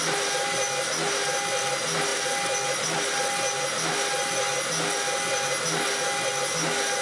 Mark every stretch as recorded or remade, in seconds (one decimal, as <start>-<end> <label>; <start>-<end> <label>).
0.0-7.0 recorded